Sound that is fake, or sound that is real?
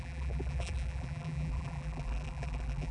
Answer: fake